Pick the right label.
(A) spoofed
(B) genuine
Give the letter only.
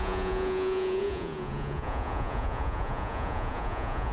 A